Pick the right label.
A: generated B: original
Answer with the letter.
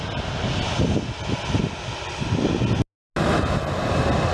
B